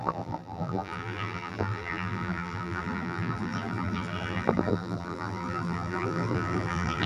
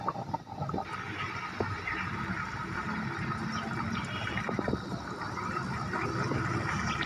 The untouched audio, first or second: second